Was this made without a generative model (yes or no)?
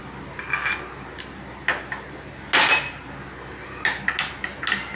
yes